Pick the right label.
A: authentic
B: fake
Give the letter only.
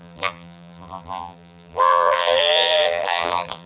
B